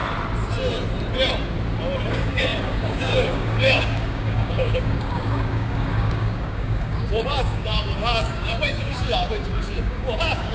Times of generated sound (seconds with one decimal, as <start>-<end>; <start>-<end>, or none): 2.1-10.5